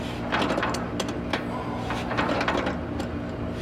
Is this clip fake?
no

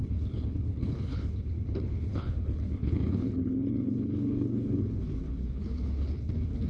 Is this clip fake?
yes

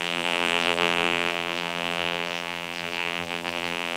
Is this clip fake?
yes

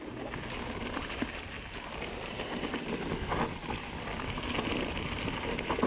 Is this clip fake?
no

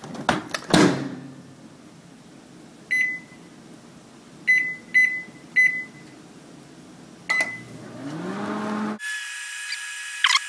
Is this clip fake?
no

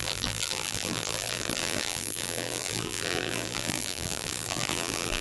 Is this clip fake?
yes